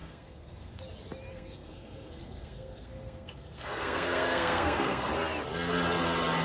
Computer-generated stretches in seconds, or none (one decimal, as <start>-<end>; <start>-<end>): 0.0-0.8; 1.3-5.1